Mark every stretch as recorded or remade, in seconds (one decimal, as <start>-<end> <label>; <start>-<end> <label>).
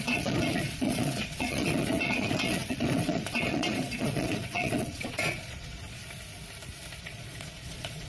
0.0-6.0 remade; 6.0-7.0 recorded; 7.0-8.1 remade